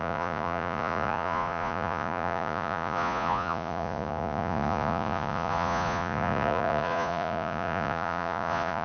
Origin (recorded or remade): remade